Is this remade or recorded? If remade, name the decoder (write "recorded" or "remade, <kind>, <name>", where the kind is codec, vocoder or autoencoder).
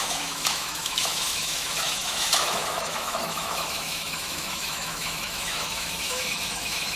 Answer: remade, autoencoder, DAC-VAE